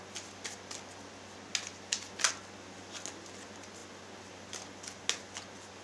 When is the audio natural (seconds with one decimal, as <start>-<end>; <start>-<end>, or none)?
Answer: 0.0-5.8